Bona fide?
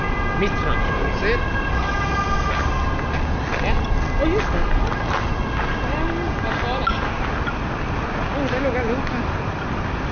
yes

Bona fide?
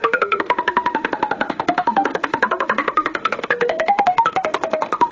no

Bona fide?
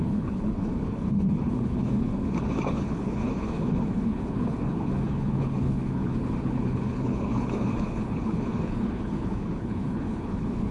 no